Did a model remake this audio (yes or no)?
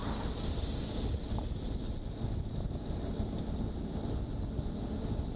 no